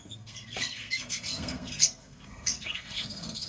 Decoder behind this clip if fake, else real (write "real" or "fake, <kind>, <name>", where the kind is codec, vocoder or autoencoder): fake, codec, SNAC